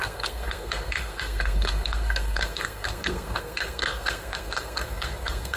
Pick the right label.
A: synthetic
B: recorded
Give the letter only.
A